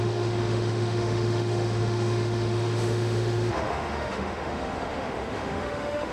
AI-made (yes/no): yes